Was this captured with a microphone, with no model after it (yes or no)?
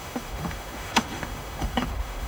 no